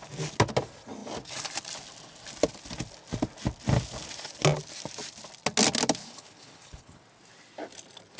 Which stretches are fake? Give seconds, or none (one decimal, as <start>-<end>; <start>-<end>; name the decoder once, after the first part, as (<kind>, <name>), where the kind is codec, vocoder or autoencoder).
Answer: 6.0-7.0 (codec, HILCodec)